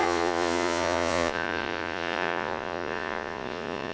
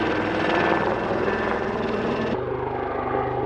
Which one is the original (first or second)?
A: second